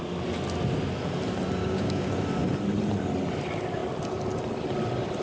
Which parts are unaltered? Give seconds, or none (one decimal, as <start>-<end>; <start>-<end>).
0.0-1.6; 2.1-5.2